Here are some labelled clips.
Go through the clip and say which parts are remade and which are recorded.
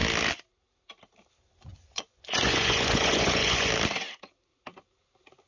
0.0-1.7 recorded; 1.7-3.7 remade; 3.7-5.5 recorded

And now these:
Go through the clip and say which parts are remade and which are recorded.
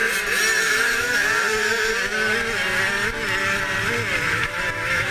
0.0-0.6 recorded; 0.6-1.2 remade; 1.2-4.3 recorded; 4.3-5.1 remade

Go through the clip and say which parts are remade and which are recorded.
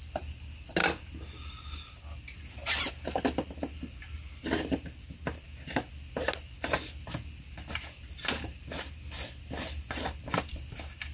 0.0-11.1 recorded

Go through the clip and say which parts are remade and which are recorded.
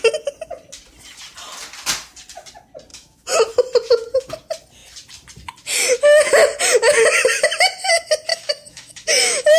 0.0-2.9 recorded; 2.9-3.5 remade; 3.5-8.3 recorded; 8.3-9.6 remade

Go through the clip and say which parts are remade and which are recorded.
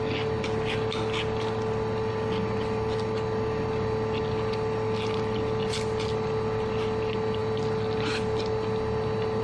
0.0-9.4 recorded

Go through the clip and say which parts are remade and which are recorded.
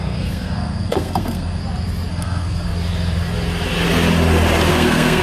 0.0-1.6 remade; 1.6-2.1 recorded; 2.1-2.7 remade; 2.7-4.7 recorded; 4.7-5.2 remade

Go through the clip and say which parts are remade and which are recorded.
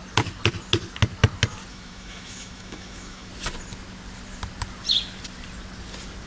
0.0-1.7 recorded; 1.7-3.3 remade; 3.3-6.3 recorded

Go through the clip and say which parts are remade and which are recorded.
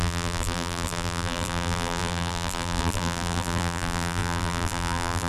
0.0-5.3 remade